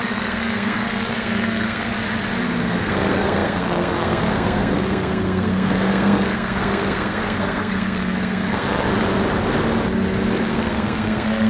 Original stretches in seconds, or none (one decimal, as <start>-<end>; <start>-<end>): 1.9-2.6; 8.9-10.5